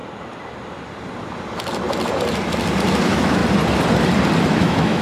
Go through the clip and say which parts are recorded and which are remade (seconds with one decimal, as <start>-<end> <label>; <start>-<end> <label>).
0.0-3.0 recorded; 3.0-3.4 remade; 3.4-4.4 recorded; 4.4-5.0 remade